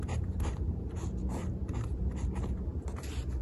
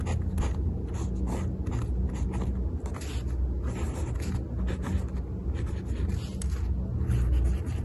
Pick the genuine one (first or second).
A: second